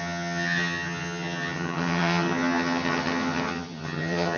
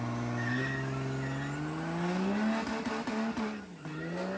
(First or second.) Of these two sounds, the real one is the second